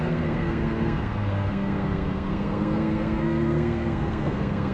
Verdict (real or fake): fake